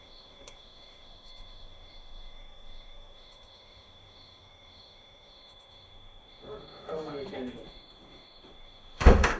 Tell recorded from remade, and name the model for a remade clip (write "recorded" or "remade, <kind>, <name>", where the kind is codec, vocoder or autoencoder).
remade, autoencoder, DAC-VAE